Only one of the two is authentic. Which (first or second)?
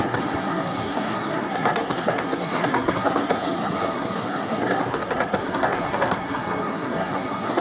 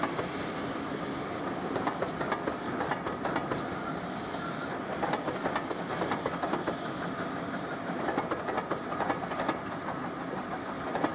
second